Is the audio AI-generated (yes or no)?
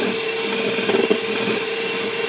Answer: no